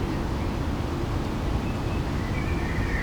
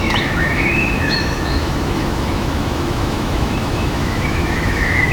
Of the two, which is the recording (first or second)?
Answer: first